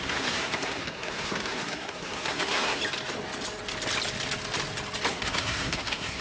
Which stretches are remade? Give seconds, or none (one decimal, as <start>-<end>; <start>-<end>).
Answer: 0.0-2.8; 5.1-6.2

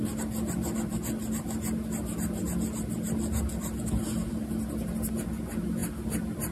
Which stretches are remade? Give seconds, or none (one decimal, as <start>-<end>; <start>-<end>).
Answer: none

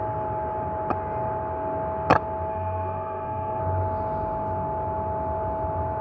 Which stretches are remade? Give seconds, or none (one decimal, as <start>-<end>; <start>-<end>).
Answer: 2.5-3.6

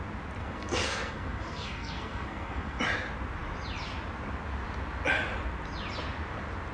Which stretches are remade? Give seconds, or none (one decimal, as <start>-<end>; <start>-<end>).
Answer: 0.4-2.8